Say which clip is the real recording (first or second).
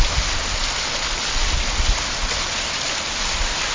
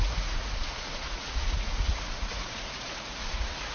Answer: first